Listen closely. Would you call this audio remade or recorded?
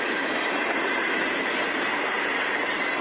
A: recorded